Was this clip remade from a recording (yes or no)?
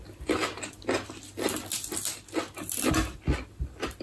no